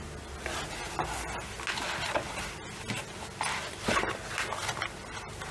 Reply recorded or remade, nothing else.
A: recorded